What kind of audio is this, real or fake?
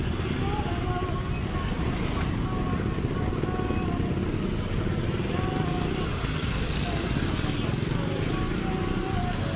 real